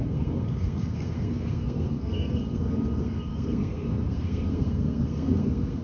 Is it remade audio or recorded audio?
remade